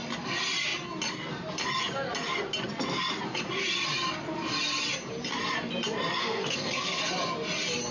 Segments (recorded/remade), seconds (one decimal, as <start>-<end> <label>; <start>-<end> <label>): 0.0-6.2 recorded; 6.2-7.0 remade; 7.0-7.9 recorded